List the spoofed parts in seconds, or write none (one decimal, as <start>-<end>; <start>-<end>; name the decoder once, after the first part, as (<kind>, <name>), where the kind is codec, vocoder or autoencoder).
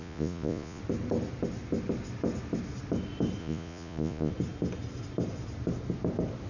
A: 0.0-0.8 (vocoder, Vocos); 3.4-4.3